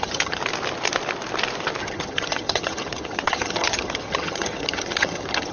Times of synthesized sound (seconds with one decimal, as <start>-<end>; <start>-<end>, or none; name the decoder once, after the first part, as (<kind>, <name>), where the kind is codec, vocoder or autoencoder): 0.0-0.4 (vocoder, HiFi-GAN); 1.8-5.5